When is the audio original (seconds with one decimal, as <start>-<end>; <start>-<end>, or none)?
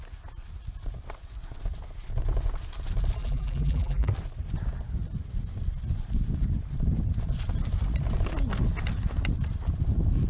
0.0-3.2; 4.1-10.3